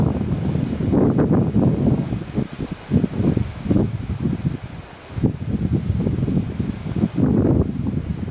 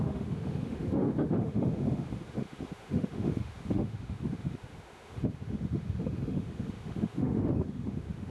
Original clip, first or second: first